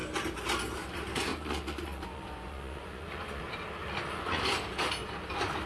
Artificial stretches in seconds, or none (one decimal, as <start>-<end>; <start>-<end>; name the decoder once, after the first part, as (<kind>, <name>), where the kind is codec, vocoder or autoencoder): 1.3-3.4 (vocoder, Vocos); 3.8-4.4